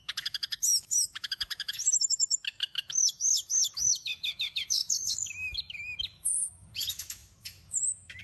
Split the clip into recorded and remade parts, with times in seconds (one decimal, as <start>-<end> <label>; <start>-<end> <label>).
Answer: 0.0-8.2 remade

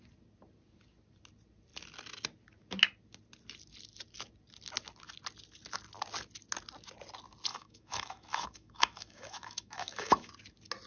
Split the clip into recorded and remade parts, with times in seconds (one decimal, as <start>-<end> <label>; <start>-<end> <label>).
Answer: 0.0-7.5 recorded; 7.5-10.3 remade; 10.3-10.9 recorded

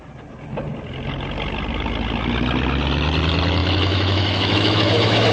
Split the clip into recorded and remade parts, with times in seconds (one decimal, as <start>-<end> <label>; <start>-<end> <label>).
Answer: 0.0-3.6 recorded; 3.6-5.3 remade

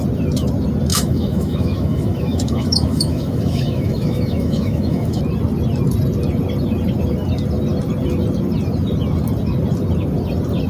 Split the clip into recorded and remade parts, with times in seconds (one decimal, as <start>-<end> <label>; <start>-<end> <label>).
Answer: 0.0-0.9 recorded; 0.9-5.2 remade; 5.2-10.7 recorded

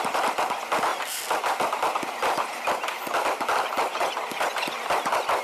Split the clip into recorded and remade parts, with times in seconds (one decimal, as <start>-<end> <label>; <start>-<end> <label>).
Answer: 0.0-5.4 recorded